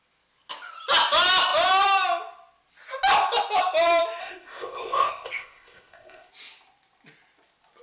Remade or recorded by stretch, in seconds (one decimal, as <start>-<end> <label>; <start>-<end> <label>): 0.0-4.2 recorded; 4.2-6.3 remade; 6.3-7.8 recorded